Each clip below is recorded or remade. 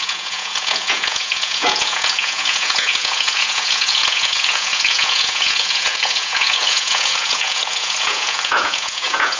remade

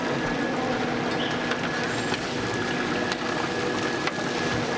recorded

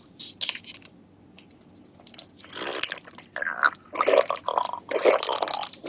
recorded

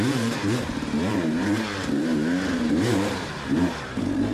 remade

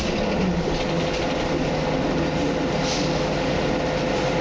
recorded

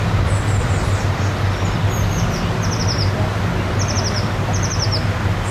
recorded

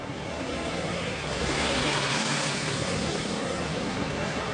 remade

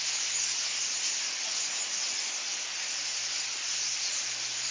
recorded